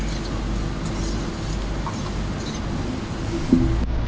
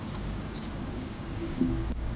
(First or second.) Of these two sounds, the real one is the first